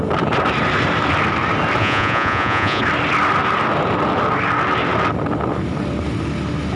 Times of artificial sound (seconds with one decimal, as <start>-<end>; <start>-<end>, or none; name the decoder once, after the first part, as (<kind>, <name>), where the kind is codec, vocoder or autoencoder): 1.8-2.8 (vocoder, Vocos)